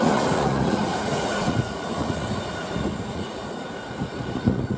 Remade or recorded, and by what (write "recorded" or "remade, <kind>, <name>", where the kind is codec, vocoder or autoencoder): remade, vocoder, Vocos